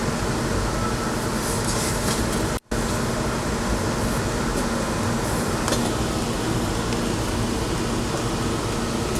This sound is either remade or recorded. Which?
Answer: recorded